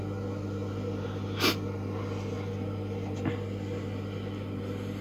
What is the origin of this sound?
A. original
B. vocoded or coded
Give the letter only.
A